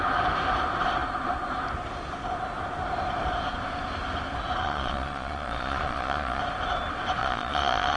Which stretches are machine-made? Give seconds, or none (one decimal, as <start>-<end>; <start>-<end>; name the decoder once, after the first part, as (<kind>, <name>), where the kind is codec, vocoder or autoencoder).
4.6-6.4 (vocoder, Vocos); 7.2-8.0